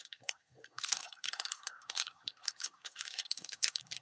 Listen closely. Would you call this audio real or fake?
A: fake